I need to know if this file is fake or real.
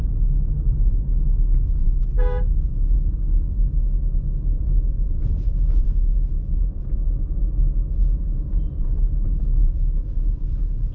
real